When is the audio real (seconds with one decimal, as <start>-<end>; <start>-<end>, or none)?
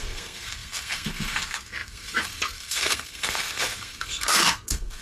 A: none